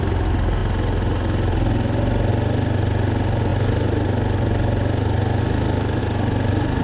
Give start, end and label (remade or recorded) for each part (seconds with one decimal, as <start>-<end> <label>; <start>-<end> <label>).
0.0-6.8 recorded